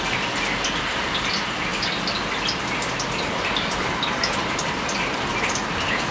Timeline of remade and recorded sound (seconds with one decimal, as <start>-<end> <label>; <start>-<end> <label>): 0.0-6.1 recorded